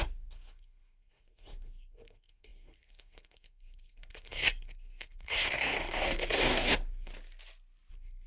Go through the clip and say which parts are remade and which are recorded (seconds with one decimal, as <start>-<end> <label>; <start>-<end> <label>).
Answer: 0.0-7.1 remade; 7.1-7.9 recorded; 7.9-8.3 remade